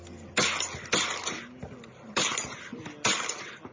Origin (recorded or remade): recorded